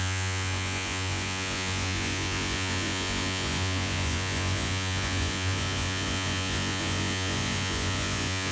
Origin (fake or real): fake